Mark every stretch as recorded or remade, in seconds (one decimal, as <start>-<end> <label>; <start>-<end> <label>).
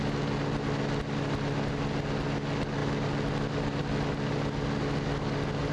0.0-5.7 recorded